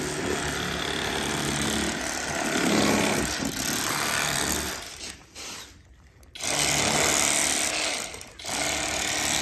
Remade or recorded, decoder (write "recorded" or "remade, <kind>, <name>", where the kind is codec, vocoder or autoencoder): recorded